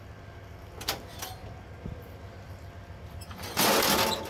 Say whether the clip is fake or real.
real